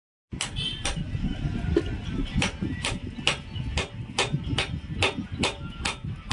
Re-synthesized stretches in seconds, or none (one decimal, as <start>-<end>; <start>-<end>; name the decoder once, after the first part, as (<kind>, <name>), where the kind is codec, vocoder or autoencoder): none